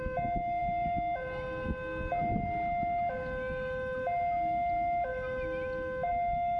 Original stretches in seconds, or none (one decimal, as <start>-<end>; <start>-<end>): 0.0-6.6